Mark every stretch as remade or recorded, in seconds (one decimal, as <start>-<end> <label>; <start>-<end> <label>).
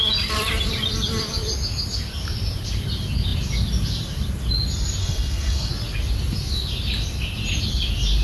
0.0-5.0 recorded; 5.0-5.7 remade; 5.7-8.2 recorded